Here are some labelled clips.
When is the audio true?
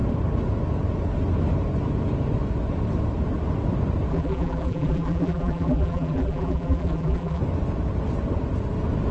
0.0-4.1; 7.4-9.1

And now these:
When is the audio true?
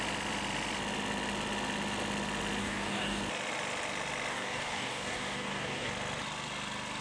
0.0-2.6; 3.2-4.3; 5.9-7.0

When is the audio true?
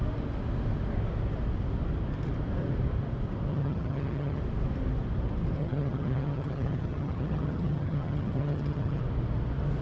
0.0-3.5; 4.4-5.6; 9.0-9.8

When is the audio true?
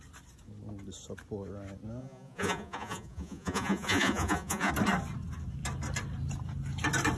0.0-2.0; 4.7-7.2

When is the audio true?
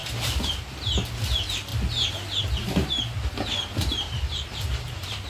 0.6-3.7